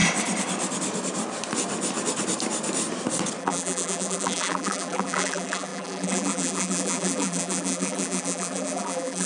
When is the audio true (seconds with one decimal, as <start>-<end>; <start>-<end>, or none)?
0.0-3.4